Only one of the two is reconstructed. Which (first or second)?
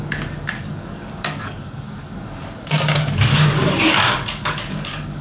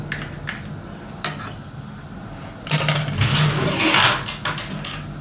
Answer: first